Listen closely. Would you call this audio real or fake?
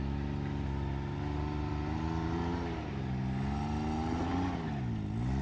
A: real